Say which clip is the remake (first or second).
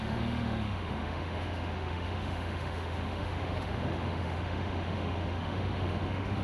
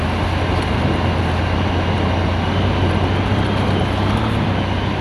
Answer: first